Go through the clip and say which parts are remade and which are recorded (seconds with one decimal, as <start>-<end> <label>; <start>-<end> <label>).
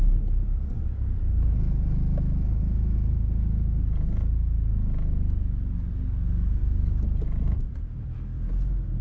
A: 0.0-6.6 recorded; 6.6-8.5 remade; 8.5-9.0 recorded